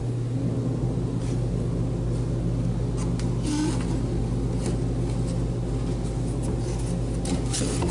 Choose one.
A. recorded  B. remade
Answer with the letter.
A